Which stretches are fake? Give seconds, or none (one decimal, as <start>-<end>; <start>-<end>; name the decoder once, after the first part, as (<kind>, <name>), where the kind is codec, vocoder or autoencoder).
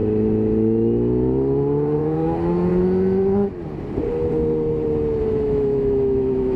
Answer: 2.0-2.7 (autoencoder, DAC-VAE); 5.2-6.6